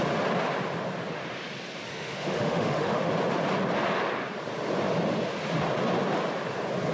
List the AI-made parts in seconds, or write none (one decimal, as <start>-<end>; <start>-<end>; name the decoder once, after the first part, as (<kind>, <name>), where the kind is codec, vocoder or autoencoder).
1.9-3.1 (autoencoder, DAC-VAE)